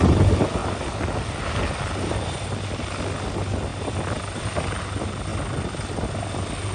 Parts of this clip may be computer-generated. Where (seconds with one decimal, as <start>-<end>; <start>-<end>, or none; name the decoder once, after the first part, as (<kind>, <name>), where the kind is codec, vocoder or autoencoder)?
none